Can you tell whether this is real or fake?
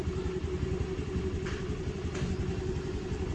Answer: real